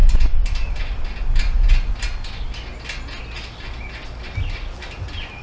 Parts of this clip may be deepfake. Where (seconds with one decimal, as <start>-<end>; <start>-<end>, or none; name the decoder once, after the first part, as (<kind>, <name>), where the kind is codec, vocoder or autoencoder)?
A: none